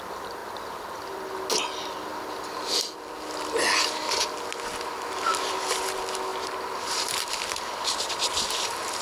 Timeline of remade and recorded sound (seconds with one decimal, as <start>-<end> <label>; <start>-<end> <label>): 0.0-9.0 recorded